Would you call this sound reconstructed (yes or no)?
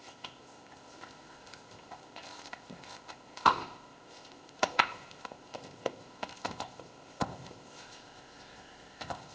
yes